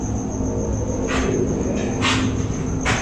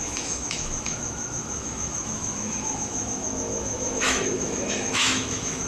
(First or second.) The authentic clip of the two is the first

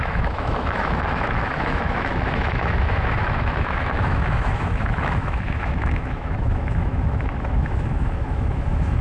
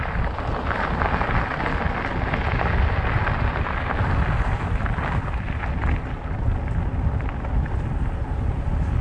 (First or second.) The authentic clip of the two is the second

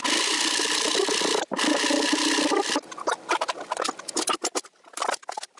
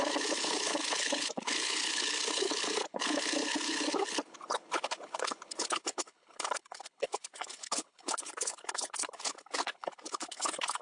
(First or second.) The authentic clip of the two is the first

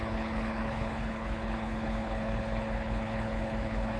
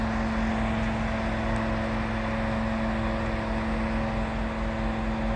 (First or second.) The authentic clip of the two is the second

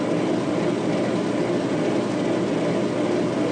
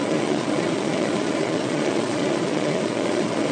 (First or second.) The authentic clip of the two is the first